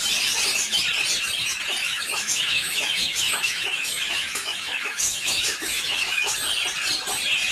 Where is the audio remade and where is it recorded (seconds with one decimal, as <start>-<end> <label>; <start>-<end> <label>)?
0.0-1.8 recorded; 1.8-6.3 remade; 6.3-7.5 recorded